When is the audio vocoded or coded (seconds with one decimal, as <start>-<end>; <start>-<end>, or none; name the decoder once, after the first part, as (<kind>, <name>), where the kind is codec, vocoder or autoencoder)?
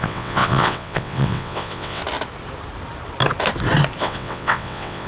0.0-2.0 (vocoder, WaveNeXt); 4.0-5.1